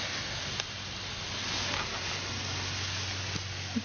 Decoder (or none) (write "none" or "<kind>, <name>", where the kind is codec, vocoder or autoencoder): none